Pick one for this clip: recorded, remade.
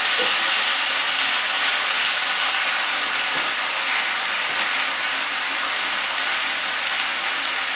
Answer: recorded